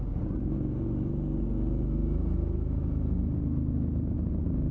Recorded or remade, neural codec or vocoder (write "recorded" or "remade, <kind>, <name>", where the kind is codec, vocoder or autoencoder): recorded